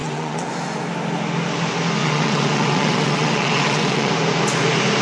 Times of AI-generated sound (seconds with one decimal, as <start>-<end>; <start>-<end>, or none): 0.0-0.5; 2.0-4.1